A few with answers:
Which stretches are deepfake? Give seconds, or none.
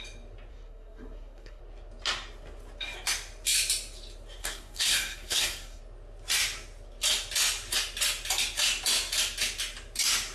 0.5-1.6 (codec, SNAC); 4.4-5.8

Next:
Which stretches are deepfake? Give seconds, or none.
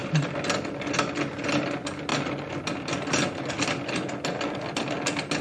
none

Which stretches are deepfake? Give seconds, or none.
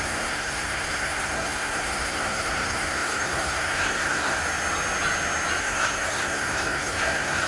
0.0-4.4 (codec, SNAC); 5.6-7.5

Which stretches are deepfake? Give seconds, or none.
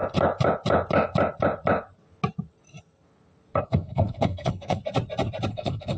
3.6-4.8 (codec, SNAC); 5.5-6.0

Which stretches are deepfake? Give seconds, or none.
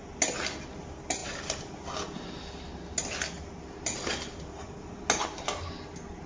none